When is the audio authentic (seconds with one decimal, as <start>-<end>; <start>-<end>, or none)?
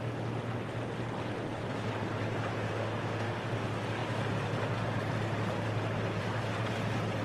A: 0.0-2.7; 3.4-7.2